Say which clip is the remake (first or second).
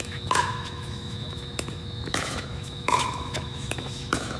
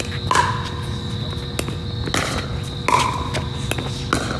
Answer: first